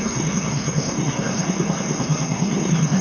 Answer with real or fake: fake